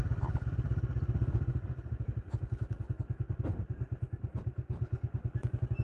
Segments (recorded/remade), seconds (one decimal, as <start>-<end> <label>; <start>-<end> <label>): 0.0-5.8 recorded